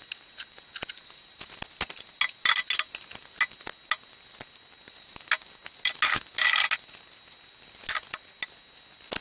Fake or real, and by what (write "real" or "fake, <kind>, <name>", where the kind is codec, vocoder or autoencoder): real